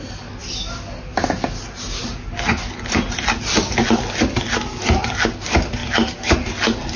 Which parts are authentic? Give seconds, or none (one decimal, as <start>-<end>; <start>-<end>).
0.0-7.0